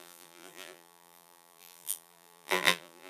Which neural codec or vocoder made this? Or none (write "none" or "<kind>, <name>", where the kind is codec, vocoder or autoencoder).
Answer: vocoder, BigVGAN v2